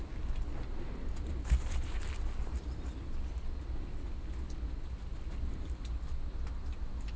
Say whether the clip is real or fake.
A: real